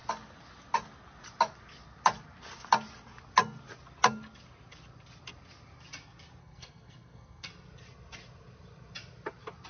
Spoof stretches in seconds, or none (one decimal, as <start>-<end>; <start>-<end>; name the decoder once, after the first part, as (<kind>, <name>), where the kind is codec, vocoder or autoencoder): 6.4-7.5 (codec, SNAC)